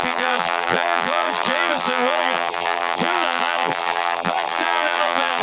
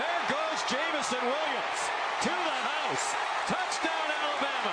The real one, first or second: second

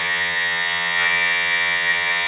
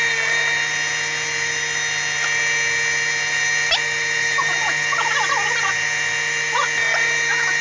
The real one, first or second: second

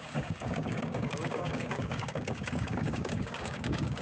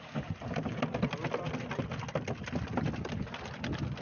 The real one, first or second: second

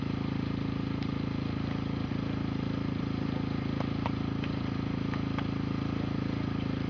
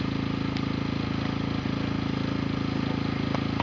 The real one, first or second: second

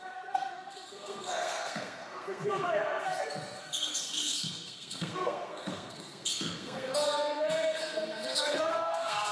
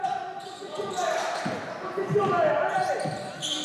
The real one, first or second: second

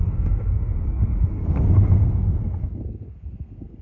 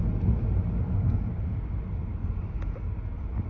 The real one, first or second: second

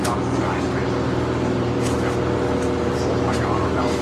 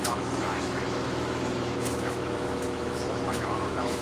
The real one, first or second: first